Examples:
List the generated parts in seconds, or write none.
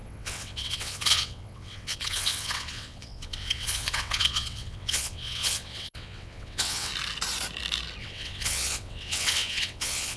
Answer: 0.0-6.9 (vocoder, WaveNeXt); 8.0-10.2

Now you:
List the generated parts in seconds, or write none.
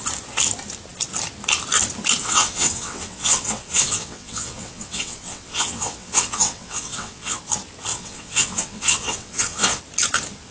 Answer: 2.2-7.4 (vocoder, WaveNeXt); 7.9-9.8